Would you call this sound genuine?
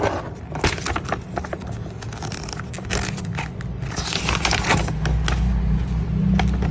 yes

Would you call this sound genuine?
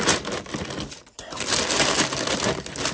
yes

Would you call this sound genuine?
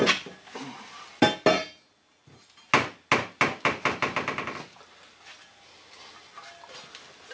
yes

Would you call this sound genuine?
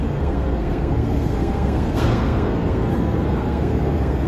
no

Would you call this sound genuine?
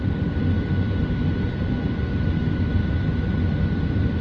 yes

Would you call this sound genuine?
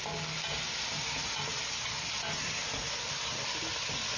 yes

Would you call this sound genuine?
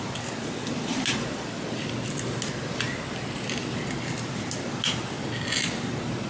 yes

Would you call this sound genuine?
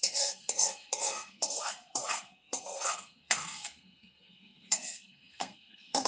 no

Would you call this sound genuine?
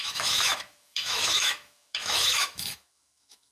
no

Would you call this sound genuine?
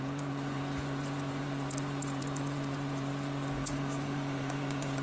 no